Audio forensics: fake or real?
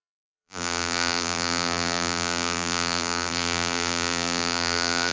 fake